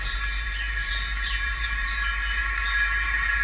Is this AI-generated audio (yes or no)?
yes